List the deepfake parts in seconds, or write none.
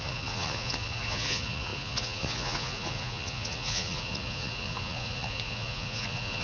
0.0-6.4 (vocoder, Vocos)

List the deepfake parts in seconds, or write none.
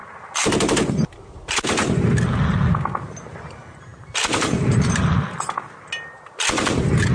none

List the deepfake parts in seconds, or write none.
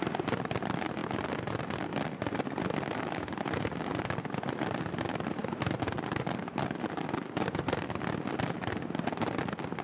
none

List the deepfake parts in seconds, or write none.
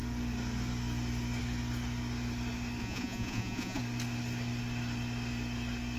2.8-3.8 (vocoder, Vocos)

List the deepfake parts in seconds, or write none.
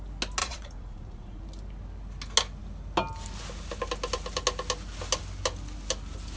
0.4-1.4 (vocoder, Vocos)